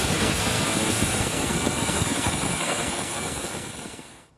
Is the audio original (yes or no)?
no